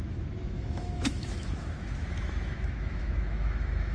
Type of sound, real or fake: fake